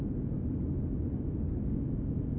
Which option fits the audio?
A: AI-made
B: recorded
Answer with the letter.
B